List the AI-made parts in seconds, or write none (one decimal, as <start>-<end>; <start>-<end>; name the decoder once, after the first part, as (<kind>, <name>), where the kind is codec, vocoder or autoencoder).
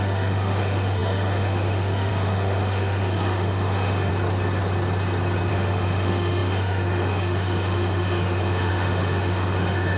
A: 0.0-4.1 (autoencoder, DAC-VAE); 5.5-10.0